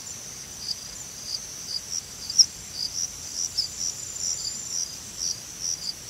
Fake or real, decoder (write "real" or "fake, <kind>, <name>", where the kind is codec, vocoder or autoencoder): real